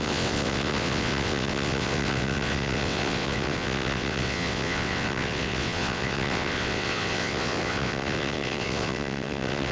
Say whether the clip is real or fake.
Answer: fake